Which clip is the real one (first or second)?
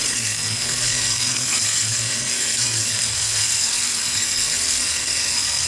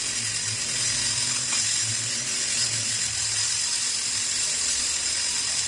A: second